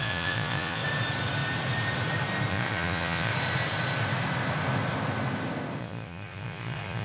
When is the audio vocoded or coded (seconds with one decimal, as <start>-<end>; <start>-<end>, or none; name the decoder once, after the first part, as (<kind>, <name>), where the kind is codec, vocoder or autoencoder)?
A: 0.0-0.8 (vocoder, Vocos); 2.5-3.3; 5.8-7.0